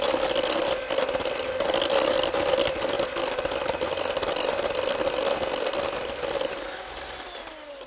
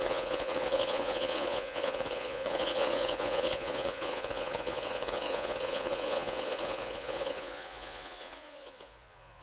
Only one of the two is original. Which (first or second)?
first